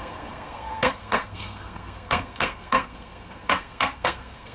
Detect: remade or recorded remade